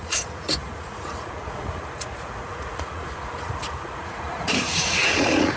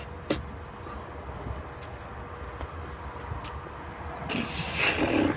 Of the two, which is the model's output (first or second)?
first